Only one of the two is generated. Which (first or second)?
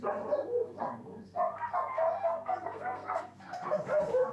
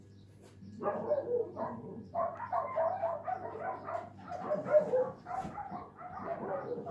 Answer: first